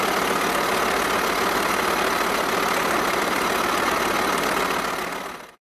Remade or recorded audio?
recorded